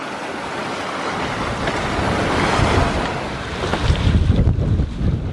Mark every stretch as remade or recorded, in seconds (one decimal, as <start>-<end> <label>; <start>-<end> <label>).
0.0-5.3 recorded